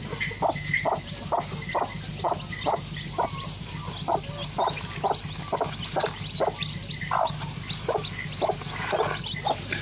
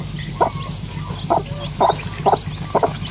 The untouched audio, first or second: second